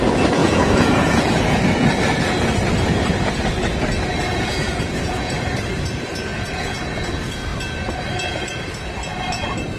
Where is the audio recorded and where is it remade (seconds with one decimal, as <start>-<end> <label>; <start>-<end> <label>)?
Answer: 0.0-0.4 recorded; 0.4-1.6 remade; 1.6-4.3 recorded; 4.3-5.2 remade; 5.2-6.3 recorded; 6.3-7.1 remade; 7.1-9.8 recorded